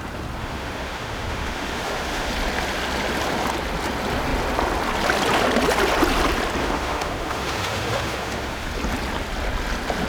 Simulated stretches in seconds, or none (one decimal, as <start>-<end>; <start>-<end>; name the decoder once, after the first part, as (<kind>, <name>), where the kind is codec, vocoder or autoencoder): 0.4-2.3 (autoencoder, DAC-VAE); 6.6-8.7